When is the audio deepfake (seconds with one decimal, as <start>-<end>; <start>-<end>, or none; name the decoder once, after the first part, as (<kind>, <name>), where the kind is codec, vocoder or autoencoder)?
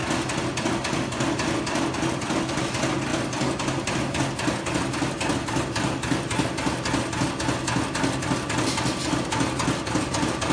none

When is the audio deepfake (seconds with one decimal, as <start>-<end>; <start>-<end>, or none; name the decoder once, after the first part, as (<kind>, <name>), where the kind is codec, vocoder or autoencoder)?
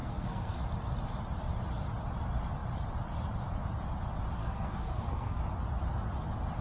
0.0-0.6 (codec, SNAC); 4.4-5.4